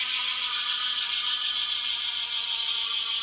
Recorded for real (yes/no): no